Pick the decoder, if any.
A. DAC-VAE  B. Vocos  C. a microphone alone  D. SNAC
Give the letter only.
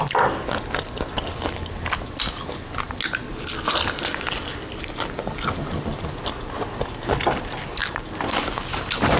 C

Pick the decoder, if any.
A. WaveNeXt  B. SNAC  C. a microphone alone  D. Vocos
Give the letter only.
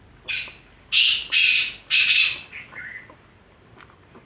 C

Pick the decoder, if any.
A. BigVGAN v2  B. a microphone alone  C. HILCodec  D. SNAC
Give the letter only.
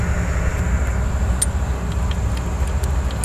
B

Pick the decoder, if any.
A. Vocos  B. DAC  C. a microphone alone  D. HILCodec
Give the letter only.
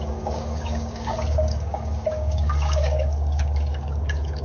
B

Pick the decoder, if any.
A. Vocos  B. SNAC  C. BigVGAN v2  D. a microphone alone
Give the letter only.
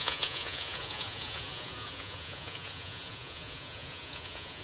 A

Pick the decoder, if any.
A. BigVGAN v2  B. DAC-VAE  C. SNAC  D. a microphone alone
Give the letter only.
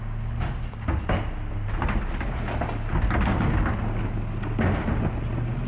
D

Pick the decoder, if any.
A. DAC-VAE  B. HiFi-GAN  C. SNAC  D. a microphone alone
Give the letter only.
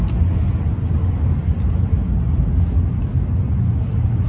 D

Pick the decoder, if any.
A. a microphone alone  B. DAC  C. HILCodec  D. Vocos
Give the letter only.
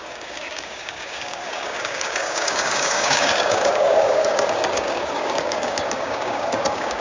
B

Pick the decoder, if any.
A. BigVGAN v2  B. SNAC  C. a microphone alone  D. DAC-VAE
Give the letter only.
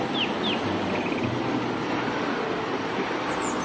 C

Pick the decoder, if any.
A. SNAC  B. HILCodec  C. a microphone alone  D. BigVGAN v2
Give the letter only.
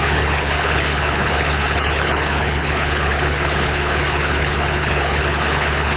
B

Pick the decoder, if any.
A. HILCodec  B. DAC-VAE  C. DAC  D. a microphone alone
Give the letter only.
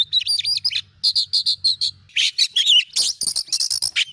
D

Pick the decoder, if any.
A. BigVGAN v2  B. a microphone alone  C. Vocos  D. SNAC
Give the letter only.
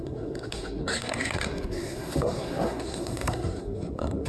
D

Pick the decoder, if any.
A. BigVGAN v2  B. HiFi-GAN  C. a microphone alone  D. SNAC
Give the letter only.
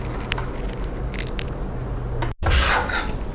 C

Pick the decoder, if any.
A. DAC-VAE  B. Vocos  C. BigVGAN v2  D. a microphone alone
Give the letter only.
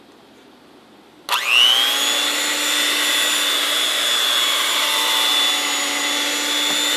D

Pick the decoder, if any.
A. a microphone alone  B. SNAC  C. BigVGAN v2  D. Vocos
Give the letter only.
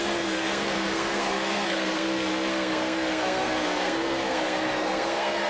B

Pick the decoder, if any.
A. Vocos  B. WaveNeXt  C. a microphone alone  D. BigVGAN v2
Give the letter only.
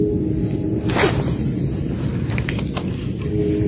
C